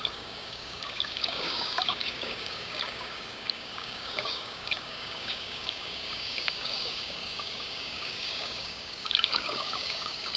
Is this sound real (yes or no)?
no